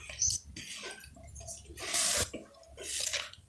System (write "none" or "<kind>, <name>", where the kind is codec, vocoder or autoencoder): none